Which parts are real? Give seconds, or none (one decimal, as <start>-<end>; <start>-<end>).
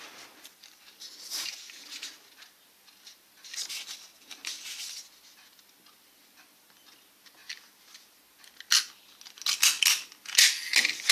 0.0-11.1